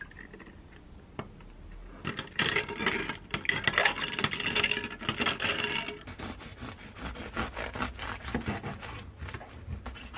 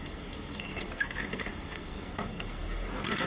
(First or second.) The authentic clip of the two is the first